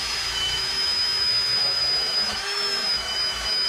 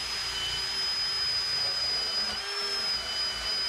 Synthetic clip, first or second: first